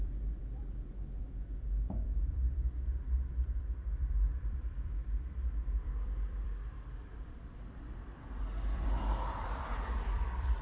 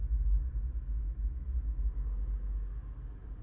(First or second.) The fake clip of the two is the first